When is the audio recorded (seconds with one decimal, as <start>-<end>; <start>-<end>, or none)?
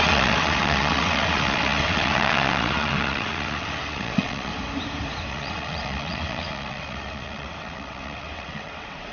4.5-5.3